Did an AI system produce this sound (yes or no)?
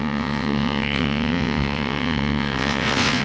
yes